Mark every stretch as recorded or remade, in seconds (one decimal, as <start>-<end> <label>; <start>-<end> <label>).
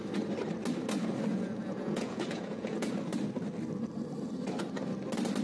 0.0-1.3 recorded; 1.3-2.9 remade; 2.9-5.4 recorded